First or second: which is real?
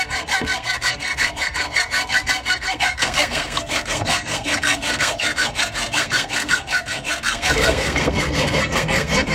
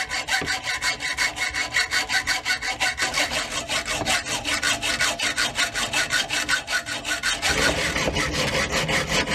second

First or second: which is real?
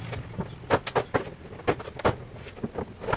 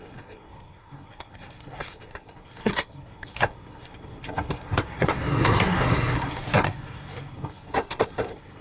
first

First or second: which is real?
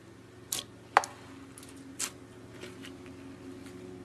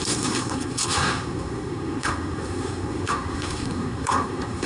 first